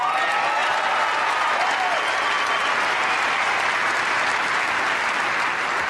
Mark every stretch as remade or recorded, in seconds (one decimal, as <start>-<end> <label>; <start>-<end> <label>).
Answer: 0.0-5.9 recorded